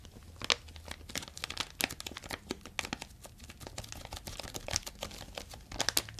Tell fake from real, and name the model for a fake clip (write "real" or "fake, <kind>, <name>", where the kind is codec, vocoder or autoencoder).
real